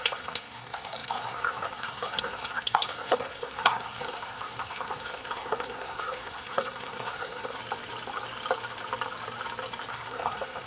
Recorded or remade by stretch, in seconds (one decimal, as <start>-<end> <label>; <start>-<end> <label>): 0.0-7.6 remade; 7.6-9.9 recorded; 9.9-10.7 remade